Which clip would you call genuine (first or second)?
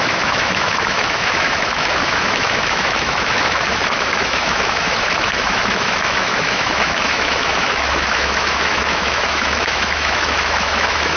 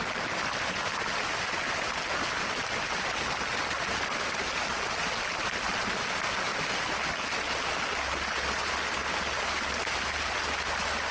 second